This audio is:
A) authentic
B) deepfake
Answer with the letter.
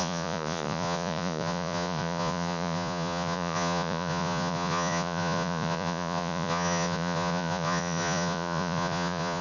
B